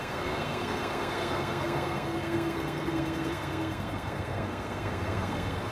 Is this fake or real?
fake